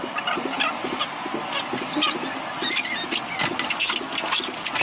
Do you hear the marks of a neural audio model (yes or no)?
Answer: no